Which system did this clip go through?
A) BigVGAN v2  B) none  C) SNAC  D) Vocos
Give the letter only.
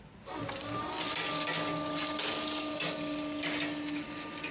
B